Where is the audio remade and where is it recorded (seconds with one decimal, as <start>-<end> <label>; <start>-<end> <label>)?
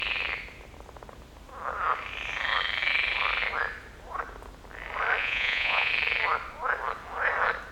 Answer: 0.0-5.2 recorded; 5.2-5.9 remade; 5.9-7.7 recorded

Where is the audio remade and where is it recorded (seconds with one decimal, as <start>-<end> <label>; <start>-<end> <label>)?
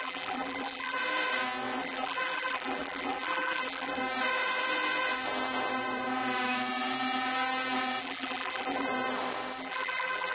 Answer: 0.0-1.0 remade; 1.0-1.8 recorded; 1.8-4.0 remade; 4.0-8.0 recorded; 8.0-8.9 remade; 8.9-9.6 recorded; 9.6-10.3 remade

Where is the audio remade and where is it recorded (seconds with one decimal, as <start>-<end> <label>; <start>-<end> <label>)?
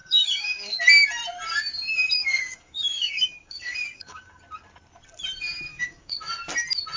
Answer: 0.0-0.7 remade; 0.7-2.2 recorded; 2.2-4.4 remade; 4.4-5.7 recorded; 5.7-6.3 remade; 6.3-7.0 recorded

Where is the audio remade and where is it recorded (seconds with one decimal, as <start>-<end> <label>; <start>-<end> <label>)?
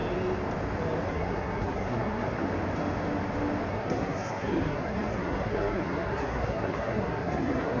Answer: 0.0-1.1 recorded; 1.1-2.4 remade; 2.4-3.7 recorded; 3.7-7.8 remade